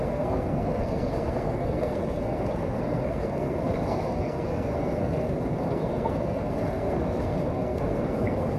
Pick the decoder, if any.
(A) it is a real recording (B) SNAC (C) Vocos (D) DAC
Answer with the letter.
B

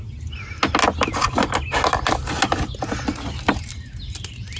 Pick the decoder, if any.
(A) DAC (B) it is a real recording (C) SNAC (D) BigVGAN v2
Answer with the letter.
B